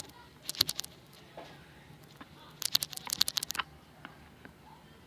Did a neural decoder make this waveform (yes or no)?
no